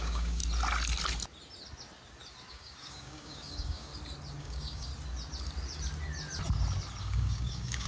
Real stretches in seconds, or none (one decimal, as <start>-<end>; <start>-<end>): 0.4-2.5; 3.9-4.4; 4.9-7.0